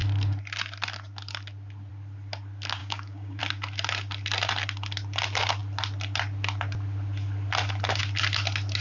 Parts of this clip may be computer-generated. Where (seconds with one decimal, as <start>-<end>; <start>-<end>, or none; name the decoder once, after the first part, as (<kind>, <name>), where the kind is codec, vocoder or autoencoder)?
2.8-3.4 (codec, DAC)